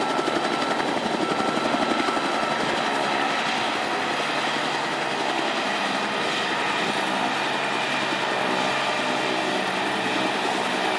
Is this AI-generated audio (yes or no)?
no